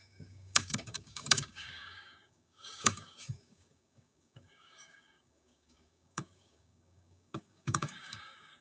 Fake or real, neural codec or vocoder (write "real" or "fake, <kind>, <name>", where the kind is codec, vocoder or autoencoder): fake, codec, DAC